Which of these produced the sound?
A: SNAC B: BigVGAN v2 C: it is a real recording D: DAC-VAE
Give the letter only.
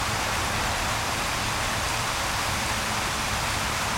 B